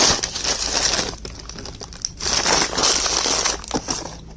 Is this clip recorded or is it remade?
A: recorded